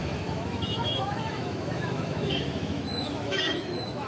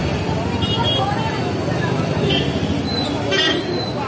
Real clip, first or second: second